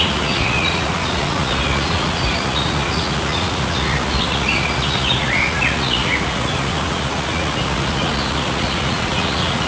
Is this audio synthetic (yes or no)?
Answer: yes